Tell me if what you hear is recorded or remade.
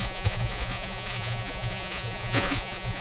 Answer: remade